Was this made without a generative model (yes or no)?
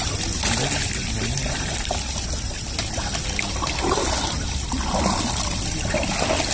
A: yes